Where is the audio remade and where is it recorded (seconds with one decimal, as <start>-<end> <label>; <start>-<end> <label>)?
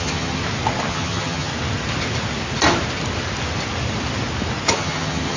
0.0-0.4 remade; 0.4-0.9 recorded; 0.9-1.5 remade; 1.5-4.7 recorded; 4.7-5.4 remade